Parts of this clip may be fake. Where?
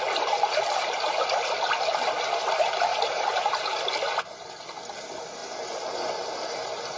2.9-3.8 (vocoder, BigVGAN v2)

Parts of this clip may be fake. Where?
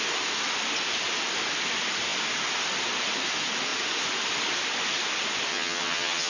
5.5-6.3 (vocoder, HiFi-GAN)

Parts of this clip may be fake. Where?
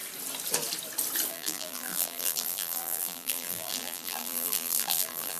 1.3-5.4 (vocoder, BigVGAN v2)